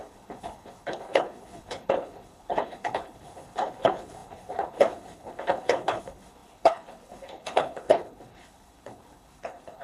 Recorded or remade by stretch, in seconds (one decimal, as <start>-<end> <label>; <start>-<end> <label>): 0.0-9.8 remade